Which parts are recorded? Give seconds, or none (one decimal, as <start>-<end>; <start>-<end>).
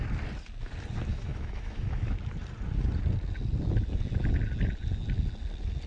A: 0.0-1.1; 2.0-5.9